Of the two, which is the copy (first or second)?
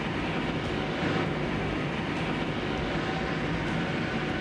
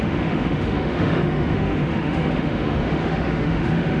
second